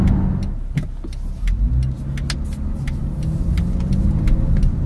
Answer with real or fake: real